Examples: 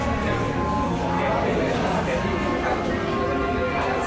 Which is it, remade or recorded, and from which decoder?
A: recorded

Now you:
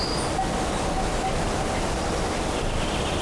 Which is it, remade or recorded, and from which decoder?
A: recorded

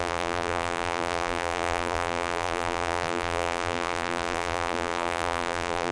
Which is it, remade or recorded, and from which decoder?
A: remade, vocoder, BigVGAN v2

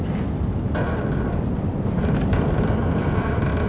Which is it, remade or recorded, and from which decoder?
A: recorded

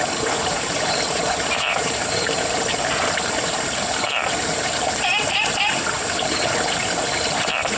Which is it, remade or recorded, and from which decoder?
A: remade, vocoder, BigVGAN v2